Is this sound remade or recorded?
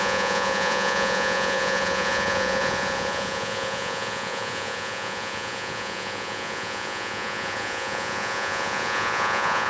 remade